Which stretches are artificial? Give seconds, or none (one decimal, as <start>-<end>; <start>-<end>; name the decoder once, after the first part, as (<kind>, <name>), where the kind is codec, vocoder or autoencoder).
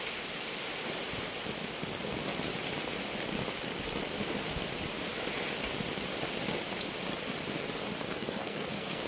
8.1-9.1 (codec, SNAC)